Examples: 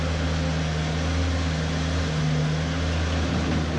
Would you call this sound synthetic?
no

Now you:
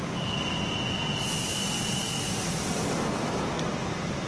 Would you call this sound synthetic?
no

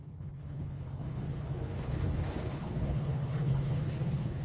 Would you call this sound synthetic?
yes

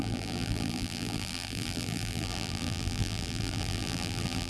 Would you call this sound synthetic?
yes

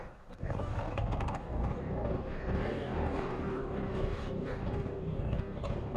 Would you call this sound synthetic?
yes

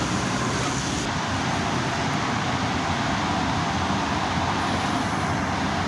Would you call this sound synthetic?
no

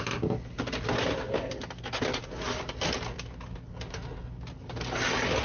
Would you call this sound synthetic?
no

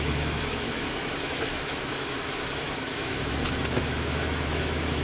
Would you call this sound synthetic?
yes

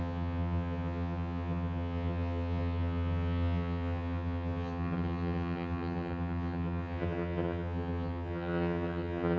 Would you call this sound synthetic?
yes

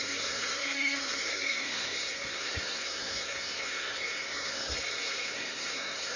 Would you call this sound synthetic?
yes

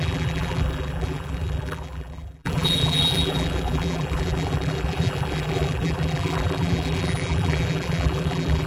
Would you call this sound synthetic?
yes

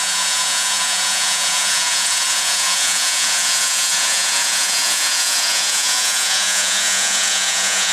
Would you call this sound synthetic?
yes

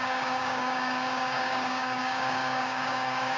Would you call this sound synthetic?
yes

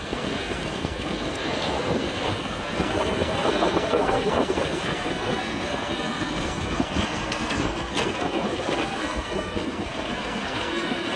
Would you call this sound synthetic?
yes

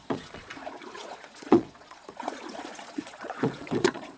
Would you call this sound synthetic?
yes